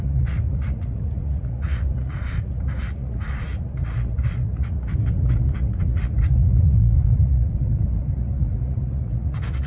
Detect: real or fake fake